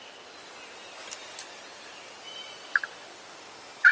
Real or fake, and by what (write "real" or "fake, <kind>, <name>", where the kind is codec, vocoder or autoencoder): real